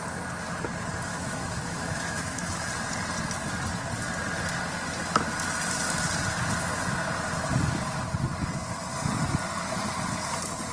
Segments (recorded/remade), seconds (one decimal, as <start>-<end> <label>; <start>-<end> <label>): 0.0-1.1 recorded; 1.1-2.7 remade; 2.7-10.7 recorded

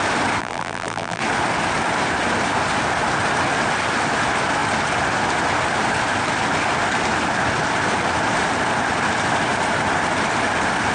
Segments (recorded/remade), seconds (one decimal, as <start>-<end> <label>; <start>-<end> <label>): 0.0-0.4 recorded; 0.4-1.2 remade; 1.2-10.9 recorded

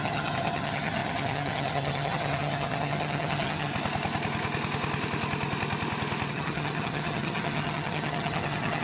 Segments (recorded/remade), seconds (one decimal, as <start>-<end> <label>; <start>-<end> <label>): 0.0-3.7 remade; 3.7-6.3 recorded; 6.3-8.8 remade

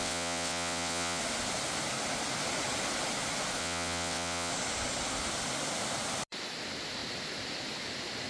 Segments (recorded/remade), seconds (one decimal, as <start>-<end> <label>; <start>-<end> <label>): 0.0-1.2 remade; 1.2-3.6 recorded; 3.6-4.5 remade; 4.5-8.3 recorded